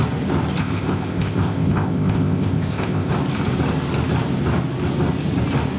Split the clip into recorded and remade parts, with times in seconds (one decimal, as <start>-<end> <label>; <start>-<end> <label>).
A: 0.0-0.6 recorded; 0.6-3.1 remade; 3.1-5.8 recorded